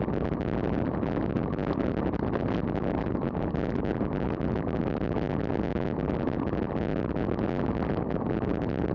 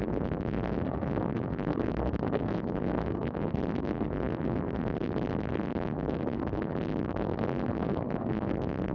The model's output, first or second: second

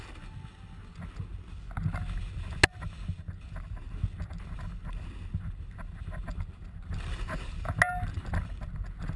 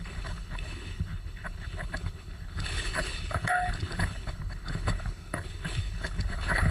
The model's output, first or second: second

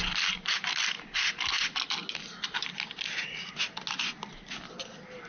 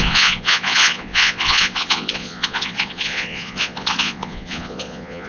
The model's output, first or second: second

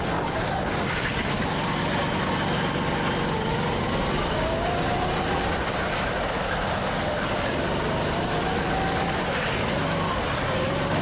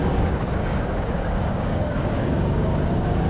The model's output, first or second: second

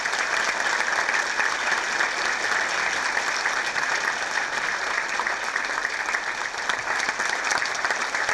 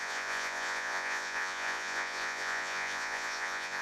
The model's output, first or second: second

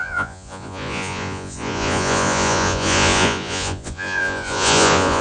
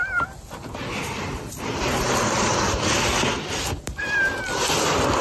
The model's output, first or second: first